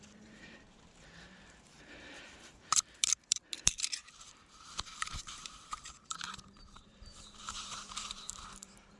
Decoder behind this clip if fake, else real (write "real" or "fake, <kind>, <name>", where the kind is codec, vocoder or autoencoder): fake, vocoder, BigVGAN v2